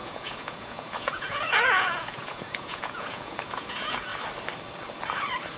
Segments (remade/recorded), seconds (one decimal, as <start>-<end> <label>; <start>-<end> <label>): 0.0-4.1 remade; 4.1-5.6 recorded